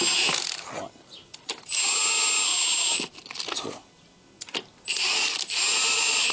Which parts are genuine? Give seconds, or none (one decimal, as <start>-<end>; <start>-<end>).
0.0-6.3